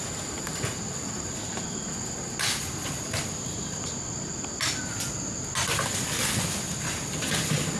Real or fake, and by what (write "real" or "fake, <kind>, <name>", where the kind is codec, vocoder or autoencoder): real